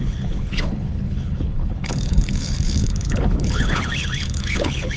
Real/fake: fake